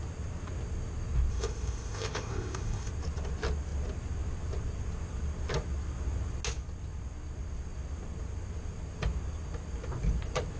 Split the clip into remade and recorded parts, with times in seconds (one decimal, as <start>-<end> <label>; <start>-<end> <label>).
0.0-1.3 recorded; 1.3-2.9 remade; 2.9-10.6 recorded